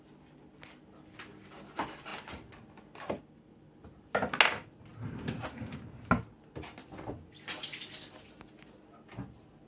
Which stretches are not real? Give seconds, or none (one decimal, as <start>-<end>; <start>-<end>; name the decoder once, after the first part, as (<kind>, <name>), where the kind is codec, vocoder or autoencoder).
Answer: none